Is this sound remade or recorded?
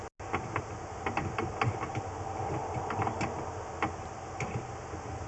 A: recorded